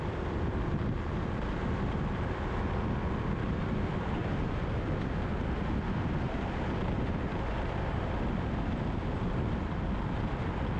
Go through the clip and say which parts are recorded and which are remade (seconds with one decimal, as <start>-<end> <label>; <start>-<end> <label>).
0.0-10.8 recorded